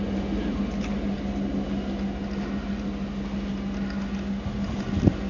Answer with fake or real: real